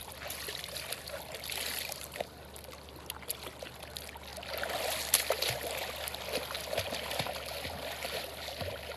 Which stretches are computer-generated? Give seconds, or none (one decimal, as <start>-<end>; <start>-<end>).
none